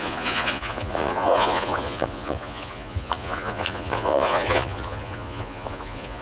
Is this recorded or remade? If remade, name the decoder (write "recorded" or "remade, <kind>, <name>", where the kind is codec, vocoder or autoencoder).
remade, vocoder, Vocos